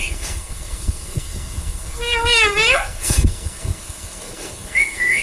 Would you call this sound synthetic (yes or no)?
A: yes